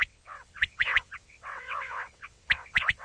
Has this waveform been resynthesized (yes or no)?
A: yes